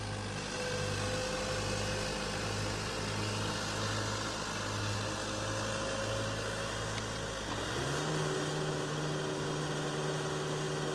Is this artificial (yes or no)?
no